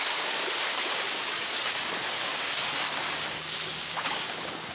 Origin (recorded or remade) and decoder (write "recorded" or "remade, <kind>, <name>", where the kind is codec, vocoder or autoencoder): remade, codec, DAC